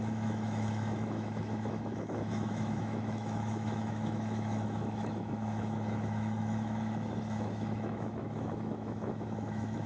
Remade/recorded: remade